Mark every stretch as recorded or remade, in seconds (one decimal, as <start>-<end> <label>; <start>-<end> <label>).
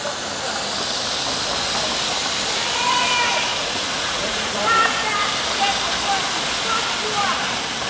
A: 0.0-3.5 recorded; 3.5-4.6 remade; 4.6-7.9 recorded